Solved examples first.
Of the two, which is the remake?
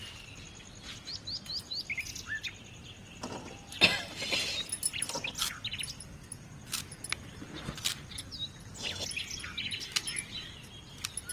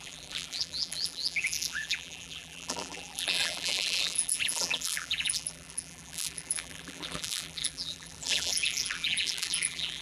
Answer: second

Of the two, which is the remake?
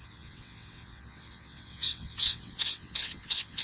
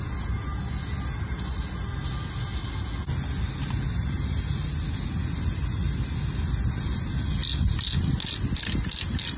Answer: first